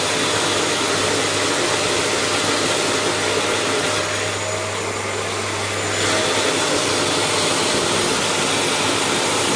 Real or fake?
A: real